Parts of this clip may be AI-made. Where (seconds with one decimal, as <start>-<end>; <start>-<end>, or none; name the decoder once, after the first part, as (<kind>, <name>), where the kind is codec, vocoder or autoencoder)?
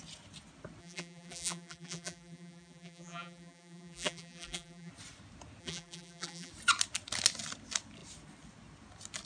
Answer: 0.8-4.9 (vocoder, BigVGAN v2); 5.6-6.5